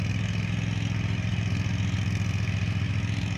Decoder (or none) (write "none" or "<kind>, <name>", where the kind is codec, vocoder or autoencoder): none